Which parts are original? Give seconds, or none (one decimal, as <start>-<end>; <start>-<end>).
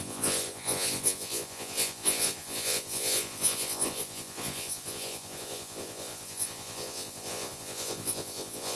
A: none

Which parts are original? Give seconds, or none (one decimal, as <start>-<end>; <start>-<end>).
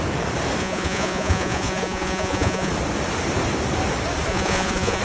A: 0.0-0.6; 2.7-4.3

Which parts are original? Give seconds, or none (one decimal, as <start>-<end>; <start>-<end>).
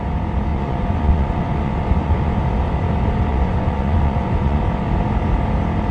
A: 0.0-0.5; 2.4-3.3; 4.6-5.9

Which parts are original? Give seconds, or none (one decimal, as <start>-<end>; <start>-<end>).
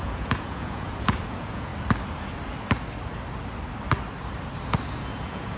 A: 1.7-5.0